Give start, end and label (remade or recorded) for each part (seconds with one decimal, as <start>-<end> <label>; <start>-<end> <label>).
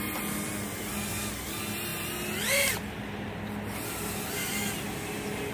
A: 0.0-1.9 recorded; 1.9-5.5 remade